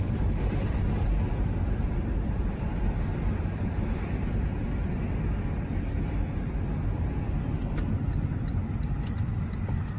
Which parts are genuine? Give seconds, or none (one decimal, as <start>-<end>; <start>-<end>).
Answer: 2.7-3.8